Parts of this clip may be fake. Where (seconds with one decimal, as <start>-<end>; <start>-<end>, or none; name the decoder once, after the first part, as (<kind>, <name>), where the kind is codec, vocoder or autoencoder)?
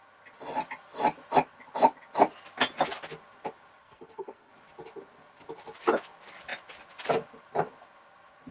3.8-4.5 (codec, SNAC)